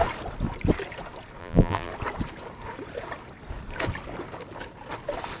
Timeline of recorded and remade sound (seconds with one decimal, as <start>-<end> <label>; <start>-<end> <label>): 0.0-1.4 recorded; 1.4-1.9 remade; 1.9-5.4 recorded